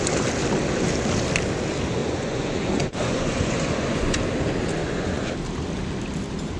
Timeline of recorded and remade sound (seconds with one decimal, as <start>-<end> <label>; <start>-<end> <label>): 0.0-2.0 recorded; 2.0-4.2 remade; 4.2-4.8 recorded; 4.8-5.3 remade; 5.3-6.6 recorded